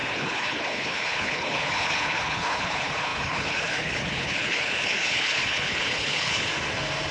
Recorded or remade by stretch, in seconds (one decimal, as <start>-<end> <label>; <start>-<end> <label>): 0.0-6.5 remade; 6.5-7.1 recorded